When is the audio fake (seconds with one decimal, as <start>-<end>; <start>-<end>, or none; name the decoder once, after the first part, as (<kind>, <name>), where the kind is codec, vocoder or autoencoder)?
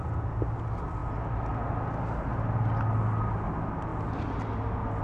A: none